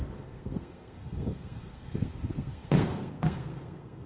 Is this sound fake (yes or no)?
yes